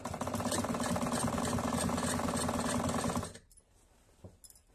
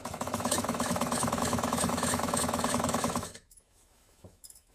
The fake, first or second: second